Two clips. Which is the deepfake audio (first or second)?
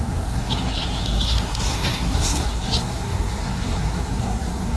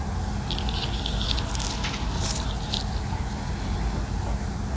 first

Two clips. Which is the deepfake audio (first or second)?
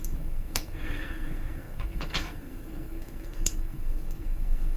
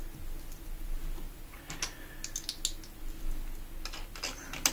first